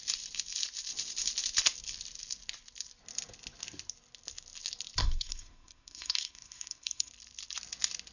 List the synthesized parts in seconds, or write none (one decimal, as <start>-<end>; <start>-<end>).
5.0-7.1